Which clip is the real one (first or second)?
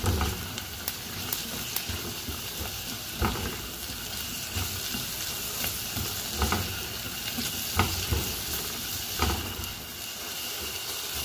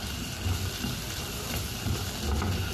first